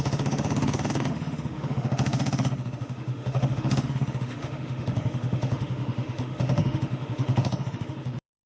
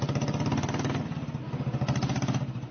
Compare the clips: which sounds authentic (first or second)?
second